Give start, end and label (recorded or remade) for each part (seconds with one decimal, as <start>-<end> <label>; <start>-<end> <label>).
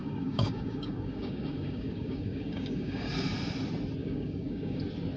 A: 0.0-3.1 remade; 3.1-4.0 recorded; 4.0-4.8 remade; 4.8-5.2 recorded